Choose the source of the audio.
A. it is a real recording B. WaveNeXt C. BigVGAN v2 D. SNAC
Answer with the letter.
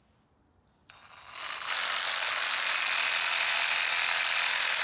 A